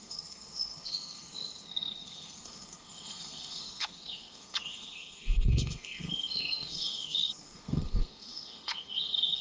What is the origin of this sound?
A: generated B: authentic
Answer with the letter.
A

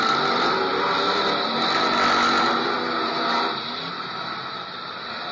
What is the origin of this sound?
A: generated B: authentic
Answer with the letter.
B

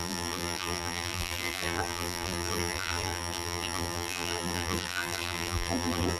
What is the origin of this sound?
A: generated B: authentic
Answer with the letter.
A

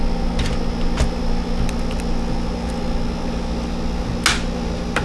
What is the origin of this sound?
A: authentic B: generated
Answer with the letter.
A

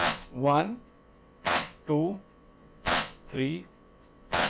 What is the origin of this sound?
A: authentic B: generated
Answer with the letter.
B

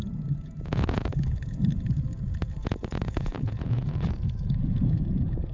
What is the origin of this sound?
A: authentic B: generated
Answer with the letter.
B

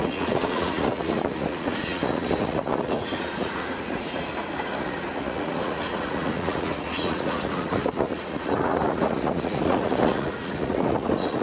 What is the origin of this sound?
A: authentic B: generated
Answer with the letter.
B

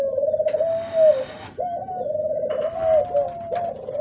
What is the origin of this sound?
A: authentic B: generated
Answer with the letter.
A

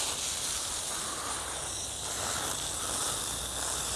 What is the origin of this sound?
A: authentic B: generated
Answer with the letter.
A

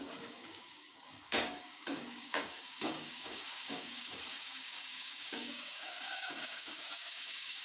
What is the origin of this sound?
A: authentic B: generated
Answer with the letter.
B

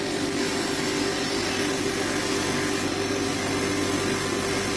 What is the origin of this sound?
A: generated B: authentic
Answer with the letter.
B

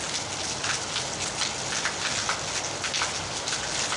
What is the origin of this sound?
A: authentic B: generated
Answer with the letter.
A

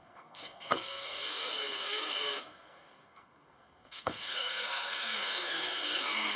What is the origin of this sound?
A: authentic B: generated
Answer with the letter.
B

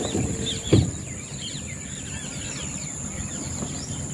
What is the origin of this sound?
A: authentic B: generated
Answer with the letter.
A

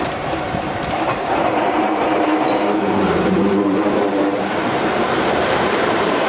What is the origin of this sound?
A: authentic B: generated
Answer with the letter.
B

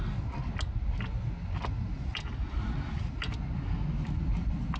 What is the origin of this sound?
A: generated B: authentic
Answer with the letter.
B